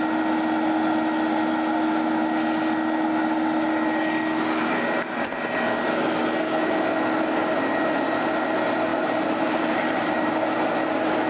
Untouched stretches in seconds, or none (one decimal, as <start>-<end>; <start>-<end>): 0.0-8.9; 10.3-11.3